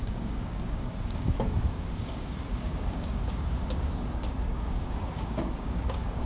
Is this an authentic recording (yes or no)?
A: no